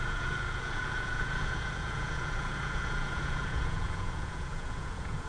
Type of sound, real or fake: fake